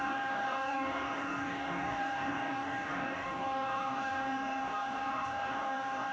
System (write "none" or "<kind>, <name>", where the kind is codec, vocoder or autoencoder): codec, DAC